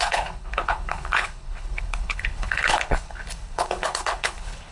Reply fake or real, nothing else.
fake